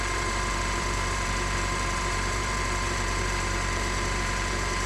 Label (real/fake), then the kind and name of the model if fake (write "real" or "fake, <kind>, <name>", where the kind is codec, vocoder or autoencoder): fake, vocoder, BigVGAN v2